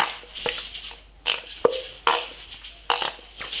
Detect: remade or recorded recorded